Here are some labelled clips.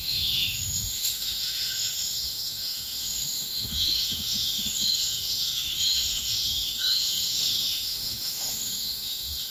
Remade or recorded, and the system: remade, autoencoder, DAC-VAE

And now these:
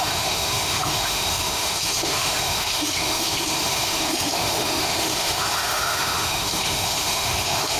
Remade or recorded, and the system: remade, autoencoder, DAC-VAE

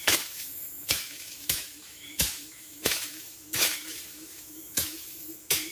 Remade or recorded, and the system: remade, autoencoder, DAC-VAE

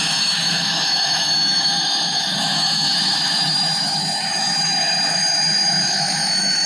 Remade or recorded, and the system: remade, autoencoder, DAC-VAE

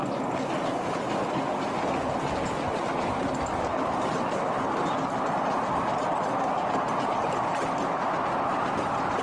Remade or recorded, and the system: recorded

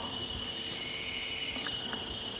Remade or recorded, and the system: recorded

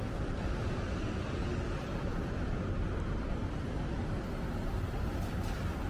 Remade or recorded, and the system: recorded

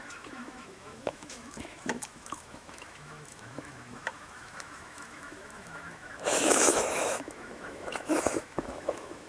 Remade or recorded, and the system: remade, autoencoder, DAC-VAE